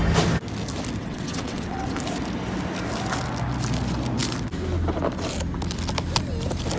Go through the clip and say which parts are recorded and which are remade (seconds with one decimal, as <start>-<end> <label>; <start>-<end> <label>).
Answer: 0.0-1.0 recorded; 1.0-2.0 remade; 2.0-6.8 recorded